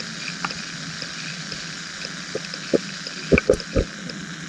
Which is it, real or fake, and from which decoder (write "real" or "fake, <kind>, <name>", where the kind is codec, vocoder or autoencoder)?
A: real